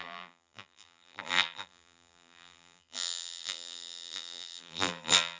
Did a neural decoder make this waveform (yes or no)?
yes